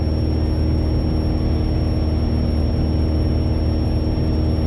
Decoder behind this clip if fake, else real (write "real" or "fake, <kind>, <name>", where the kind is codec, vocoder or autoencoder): real